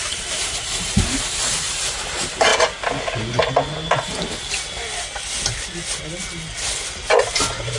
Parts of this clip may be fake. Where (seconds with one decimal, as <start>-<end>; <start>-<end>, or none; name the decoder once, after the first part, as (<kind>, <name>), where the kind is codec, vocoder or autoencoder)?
0.0-2.5 (vocoder, BigVGAN v2); 7.2-7.8